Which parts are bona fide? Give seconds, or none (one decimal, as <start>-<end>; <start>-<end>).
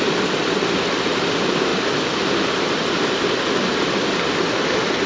0.0-5.1